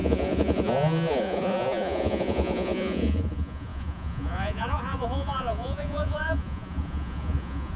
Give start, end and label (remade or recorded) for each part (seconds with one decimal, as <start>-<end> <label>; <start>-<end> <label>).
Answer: 0.0-7.8 remade